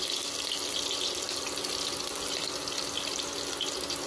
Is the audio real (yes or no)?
yes